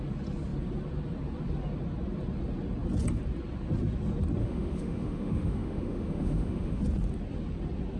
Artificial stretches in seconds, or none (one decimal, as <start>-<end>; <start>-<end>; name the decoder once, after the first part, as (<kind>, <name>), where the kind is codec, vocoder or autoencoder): 4.4-6.8 (autoencoder, DAC-VAE)